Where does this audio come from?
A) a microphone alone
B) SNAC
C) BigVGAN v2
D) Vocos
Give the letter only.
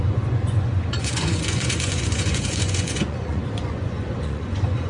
D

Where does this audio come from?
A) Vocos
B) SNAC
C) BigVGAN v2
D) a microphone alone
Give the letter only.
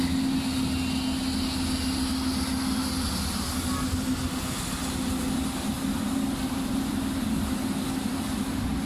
D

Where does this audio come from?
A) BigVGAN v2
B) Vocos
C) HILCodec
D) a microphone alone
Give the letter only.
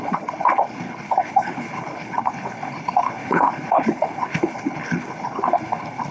C